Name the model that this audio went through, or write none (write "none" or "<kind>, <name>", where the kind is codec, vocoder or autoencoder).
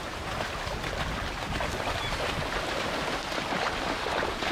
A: none